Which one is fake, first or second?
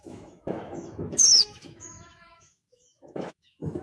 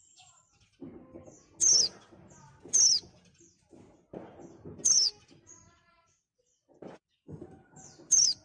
first